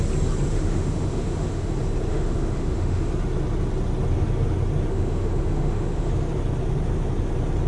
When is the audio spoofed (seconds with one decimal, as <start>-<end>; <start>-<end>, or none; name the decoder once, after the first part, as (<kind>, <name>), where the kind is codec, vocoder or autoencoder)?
0.5-1.7 (autoencoder, DAC-VAE); 2.1-3.1; 4.9-6.1